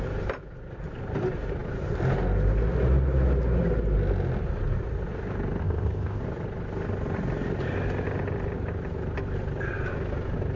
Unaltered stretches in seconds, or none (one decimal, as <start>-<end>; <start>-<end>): 0.0-5.6; 6.2-10.6